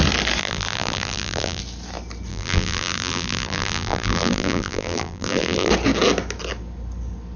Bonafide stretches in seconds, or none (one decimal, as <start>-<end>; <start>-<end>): 0.0-0.4; 1.6-2.3; 5.7-7.4